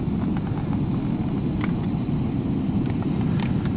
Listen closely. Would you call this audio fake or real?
real